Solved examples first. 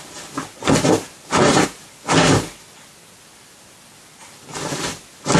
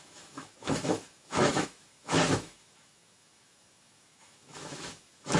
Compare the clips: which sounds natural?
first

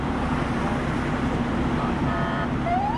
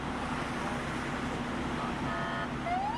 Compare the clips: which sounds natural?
second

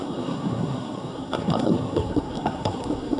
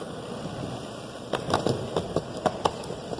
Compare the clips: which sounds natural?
second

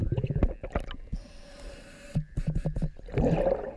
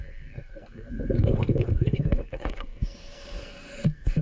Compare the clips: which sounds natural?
first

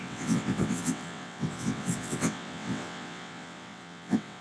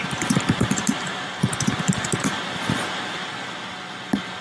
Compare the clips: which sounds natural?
second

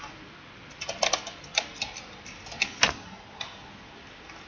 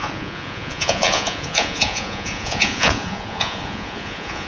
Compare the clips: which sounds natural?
first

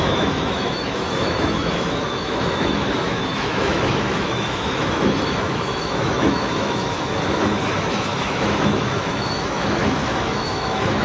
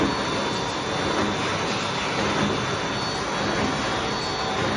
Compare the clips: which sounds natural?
second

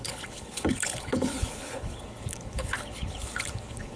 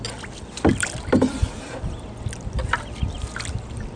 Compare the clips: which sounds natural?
second